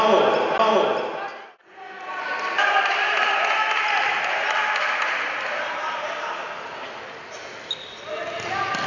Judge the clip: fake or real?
real